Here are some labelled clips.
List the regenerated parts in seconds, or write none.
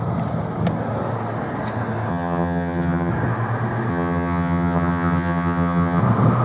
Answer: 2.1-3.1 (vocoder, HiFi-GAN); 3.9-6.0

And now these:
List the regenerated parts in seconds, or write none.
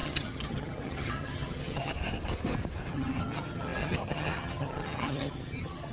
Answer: 0.0-1.9 (vocoder, HiFi-GAN); 2.9-5.9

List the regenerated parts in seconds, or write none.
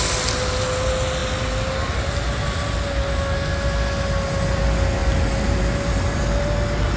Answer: none